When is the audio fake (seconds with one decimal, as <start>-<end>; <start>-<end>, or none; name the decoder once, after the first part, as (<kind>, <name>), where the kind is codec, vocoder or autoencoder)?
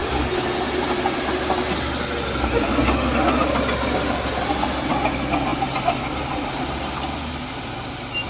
none